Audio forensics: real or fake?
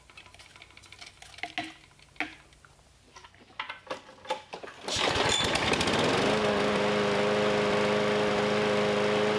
real